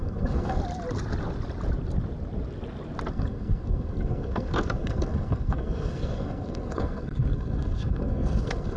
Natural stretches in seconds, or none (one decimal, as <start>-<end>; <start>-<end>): 0.6-3.1